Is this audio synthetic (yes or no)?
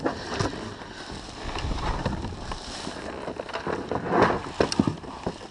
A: yes